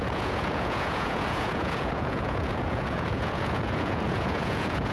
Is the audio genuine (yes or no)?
no